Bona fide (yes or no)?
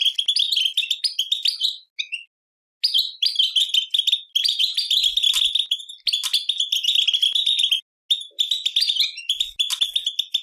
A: yes